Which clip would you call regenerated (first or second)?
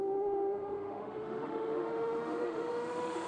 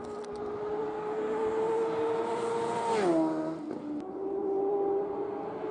first